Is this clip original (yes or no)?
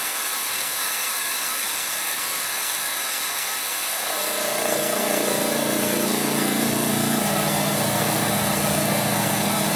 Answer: no